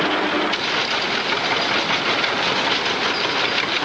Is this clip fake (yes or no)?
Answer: no